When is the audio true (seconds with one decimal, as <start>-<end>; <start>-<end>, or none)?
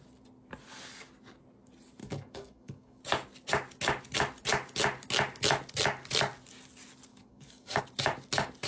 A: 0.0-2.0; 3.0-7.1; 7.8-8.7